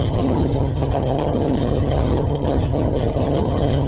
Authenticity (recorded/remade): remade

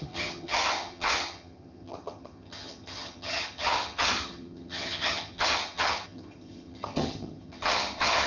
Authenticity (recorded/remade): remade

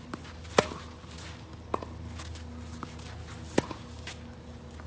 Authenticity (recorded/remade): recorded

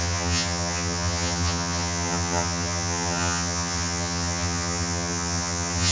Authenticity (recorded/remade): remade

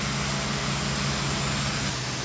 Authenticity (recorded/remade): recorded